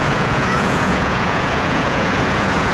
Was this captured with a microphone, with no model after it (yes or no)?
no